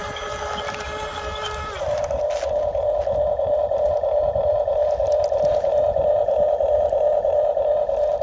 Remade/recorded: recorded